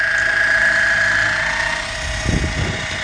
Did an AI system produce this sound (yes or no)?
no